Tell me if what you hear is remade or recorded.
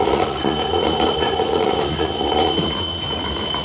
remade